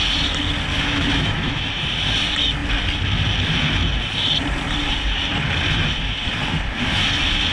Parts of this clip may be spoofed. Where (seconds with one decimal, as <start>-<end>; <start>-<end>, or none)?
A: 0.7-1.6